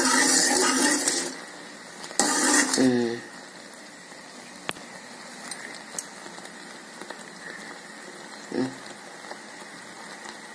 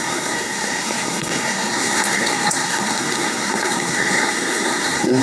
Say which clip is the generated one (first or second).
second